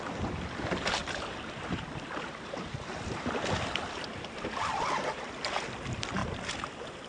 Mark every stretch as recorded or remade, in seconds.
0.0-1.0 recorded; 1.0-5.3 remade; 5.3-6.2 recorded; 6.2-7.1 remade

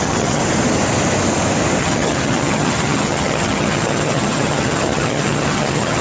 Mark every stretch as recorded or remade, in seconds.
0.0-0.4 remade; 0.4-1.8 recorded; 1.8-6.0 remade

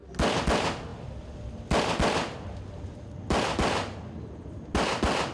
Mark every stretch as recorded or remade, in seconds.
0.0-5.3 recorded

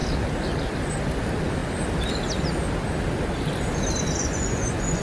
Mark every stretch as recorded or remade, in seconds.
0.0-4.2 recorded; 4.2-5.0 remade